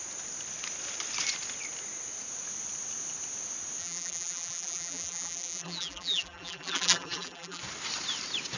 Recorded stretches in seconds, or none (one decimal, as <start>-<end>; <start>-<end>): 0.0-3.8; 7.6-8.6